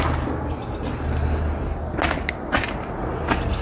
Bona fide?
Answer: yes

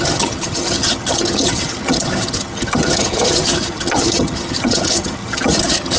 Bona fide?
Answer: no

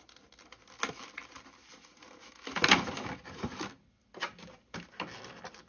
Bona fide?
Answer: yes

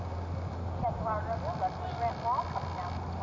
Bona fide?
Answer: yes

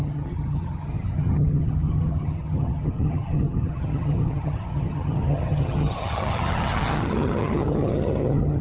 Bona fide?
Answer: no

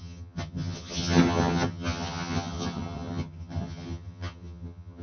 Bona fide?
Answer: no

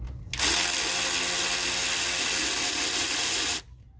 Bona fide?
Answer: yes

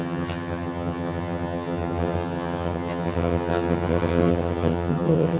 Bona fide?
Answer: no